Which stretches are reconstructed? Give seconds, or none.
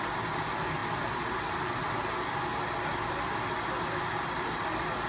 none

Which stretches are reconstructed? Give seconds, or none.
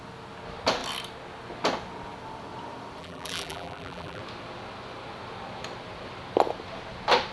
3.0-4.2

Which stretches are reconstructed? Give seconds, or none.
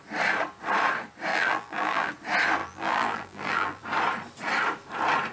1.3-2.1; 2.6-3.8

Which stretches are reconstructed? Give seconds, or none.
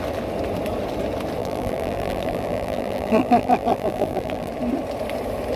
1.4-4.5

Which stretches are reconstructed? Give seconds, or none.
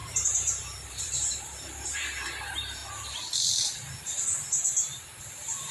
0.0-2.8; 4.0-4.6; 5.2-5.7